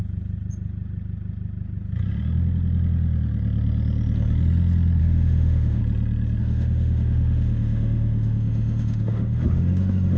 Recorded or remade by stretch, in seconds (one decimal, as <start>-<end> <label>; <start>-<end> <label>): 0.0-5.0 recorded; 5.0-5.8 remade; 5.8-6.4 recorded; 6.4-10.2 remade